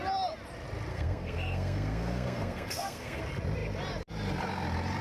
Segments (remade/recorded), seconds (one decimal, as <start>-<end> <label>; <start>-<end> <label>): 0.0-0.9 recorded; 0.9-3.2 remade; 3.2-5.0 recorded